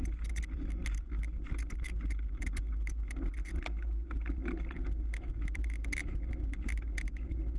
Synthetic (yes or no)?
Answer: no